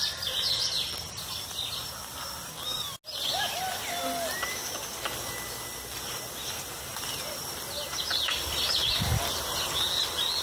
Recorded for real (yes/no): yes